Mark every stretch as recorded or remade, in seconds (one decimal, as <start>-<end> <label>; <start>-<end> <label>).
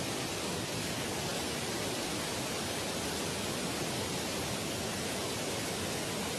0.0-6.4 recorded